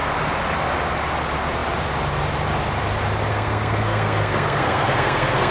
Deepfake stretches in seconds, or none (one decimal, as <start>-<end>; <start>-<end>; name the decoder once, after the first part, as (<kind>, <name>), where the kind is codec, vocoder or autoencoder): 3.3-5.5 (codec, SNAC)

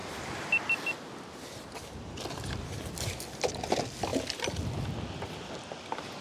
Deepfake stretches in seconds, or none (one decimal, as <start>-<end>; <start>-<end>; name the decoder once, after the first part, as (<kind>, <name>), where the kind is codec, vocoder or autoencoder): none

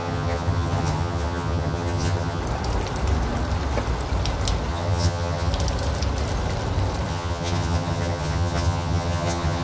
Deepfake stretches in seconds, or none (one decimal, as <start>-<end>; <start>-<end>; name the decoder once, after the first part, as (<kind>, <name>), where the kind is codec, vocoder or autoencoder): 0.0-2.4 (vocoder, HiFi-GAN); 4.7-5.5; 7.1-9.6

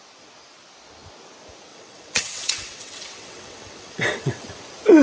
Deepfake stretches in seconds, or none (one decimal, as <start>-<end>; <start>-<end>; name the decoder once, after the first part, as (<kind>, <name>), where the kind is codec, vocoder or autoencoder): 1.7-4.5 (vocoder, WaveNeXt)

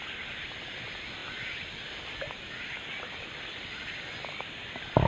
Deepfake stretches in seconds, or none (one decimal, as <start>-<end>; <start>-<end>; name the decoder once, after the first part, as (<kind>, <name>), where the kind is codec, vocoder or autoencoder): none

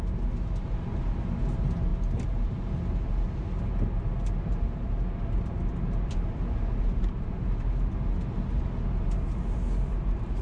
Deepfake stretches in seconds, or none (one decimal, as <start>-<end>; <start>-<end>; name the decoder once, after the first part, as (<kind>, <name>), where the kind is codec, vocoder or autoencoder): none

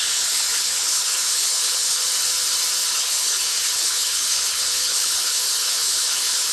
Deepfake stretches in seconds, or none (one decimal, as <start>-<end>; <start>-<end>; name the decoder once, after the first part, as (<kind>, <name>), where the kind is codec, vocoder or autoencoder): 0.0-2.0 (codec, HILCodec); 2.9-6.5

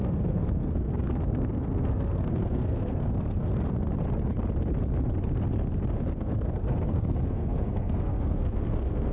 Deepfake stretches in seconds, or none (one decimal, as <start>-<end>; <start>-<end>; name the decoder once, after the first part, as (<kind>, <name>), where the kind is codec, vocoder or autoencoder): 0.0-3.5 (codec, SNAC); 6.1-9.1